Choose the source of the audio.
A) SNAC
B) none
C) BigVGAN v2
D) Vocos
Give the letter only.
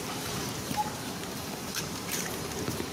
C